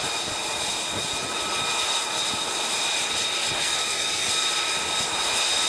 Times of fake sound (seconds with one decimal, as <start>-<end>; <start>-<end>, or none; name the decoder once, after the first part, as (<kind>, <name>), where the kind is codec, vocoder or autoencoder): 3.6-4.3 (codec, SNAC)